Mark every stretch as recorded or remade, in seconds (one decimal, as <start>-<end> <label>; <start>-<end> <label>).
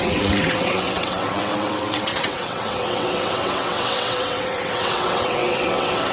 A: 0.0-6.1 remade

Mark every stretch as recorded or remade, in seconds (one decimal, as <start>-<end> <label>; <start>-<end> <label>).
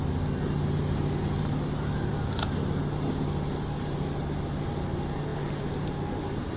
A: 0.0-6.6 recorded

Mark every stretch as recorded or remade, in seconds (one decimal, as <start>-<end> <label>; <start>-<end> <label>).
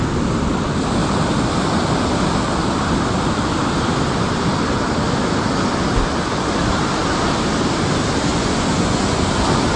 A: 0.0-8.3 recorded; 8.3-9.2 remade; 9.2-9.8 recorded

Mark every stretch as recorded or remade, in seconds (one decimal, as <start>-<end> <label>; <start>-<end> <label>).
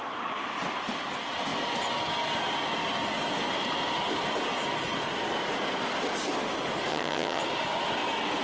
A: 0.0-6.9 recorded; 6.9-7.4 remade; 7.4-8.4 recorded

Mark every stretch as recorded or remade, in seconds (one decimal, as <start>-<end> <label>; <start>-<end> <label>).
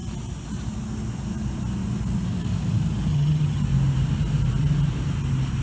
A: 0.0-3.1 recorded; 3.1-3.6 remade; 3.6-5.6 recorded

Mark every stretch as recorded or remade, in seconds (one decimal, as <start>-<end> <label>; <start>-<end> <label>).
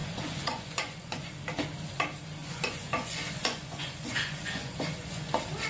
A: 0.0-1.3 remade; 1.3-2.4 recorded; 2.4-5.3 remade; 5.3-5.7 recorded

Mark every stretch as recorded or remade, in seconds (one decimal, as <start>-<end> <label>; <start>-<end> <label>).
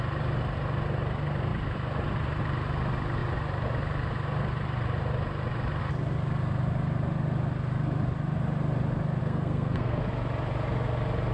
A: 0.0-9.2 recorded; 9.2-10.0 remade; 10.0-11.3 recorded